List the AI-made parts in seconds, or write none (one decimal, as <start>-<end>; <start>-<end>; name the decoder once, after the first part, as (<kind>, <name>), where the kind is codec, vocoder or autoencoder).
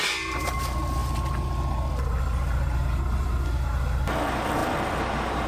none